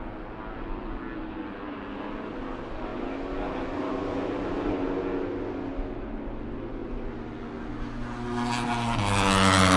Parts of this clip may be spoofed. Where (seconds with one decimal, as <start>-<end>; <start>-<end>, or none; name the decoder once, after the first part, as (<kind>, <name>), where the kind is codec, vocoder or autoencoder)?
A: none